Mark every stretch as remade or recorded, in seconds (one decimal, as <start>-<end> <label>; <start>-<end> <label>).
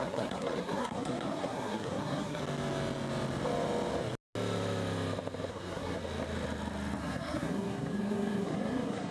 0.0-2.4 remade; 2.4-5.5 recorded; 5.5-6.0 remade; 6.0-7.0 recorded; 7.0-9.1 remade